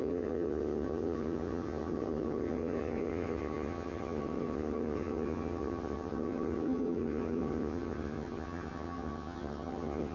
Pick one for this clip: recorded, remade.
remade